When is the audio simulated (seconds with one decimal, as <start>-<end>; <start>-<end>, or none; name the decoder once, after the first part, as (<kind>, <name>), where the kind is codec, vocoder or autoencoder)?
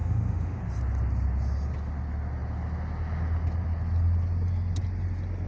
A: 0.0-0.6 (autoencoder, DAC-VAE)